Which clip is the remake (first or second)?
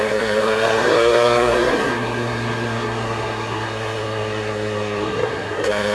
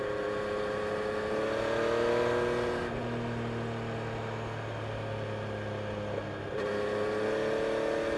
first